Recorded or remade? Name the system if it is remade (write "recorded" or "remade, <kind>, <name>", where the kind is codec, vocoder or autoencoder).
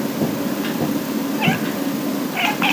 recorded